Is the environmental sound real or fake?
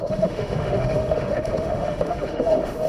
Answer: fake